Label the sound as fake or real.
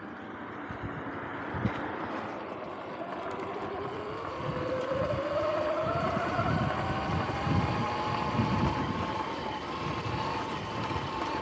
real